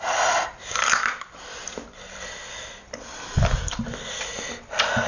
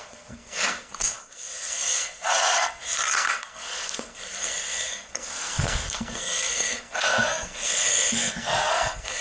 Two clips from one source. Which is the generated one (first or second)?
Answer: second